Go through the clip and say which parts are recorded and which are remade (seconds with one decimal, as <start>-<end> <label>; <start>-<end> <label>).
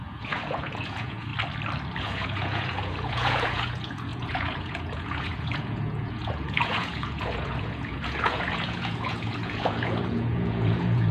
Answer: 0.0-1.3 remade; 1.3-2.0 recorded; 2.0-11.1 remade